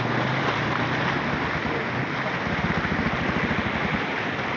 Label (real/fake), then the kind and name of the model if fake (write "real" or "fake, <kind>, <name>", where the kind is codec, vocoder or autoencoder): real